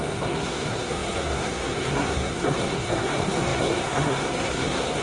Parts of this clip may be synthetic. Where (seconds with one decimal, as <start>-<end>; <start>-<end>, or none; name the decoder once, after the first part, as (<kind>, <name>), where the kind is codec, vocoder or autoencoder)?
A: 0.0-5.0 (codec, SNAC)